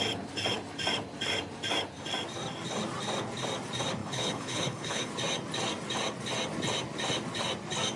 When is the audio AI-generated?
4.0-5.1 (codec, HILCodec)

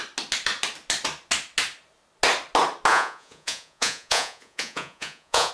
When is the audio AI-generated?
2.9-5.5 (vocoder, Vocos)

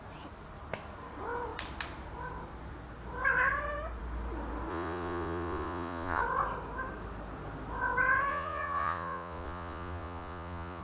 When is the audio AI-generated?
4.7-6.2 (vocoder, Vocos); 8.3-10.8

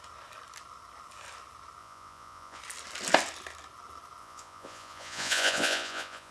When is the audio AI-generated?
1.8-2.6 (vocoder, Vocos); 4.2-6.3

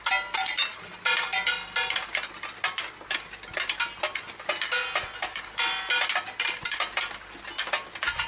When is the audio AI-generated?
none